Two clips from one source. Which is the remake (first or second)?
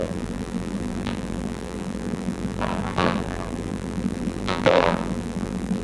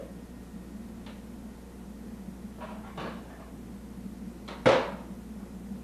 first